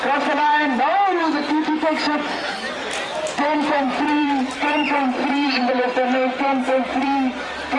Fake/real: fake